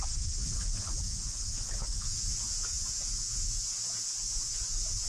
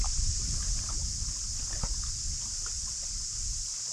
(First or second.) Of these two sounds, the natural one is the second